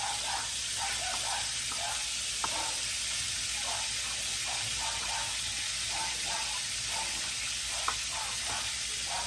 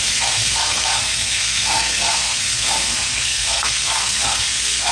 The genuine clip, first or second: first